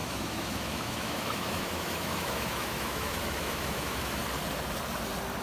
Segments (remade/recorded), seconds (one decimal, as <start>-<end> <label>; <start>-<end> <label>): 0.0-4.2 remade; 4.2-5.4 recorded